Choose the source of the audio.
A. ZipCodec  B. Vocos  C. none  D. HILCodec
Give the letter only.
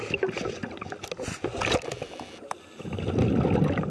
C